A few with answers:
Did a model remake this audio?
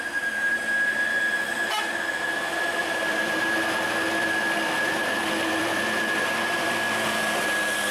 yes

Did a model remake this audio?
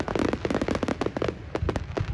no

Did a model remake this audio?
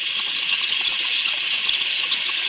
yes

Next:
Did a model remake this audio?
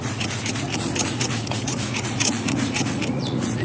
yes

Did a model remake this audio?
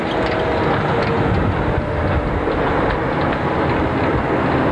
no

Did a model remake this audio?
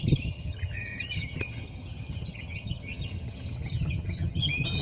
yes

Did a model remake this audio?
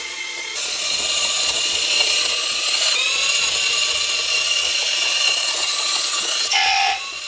yes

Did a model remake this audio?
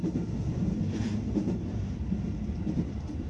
no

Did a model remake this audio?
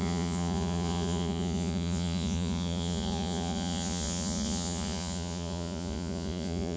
yes